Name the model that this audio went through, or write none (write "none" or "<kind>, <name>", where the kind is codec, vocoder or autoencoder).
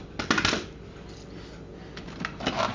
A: none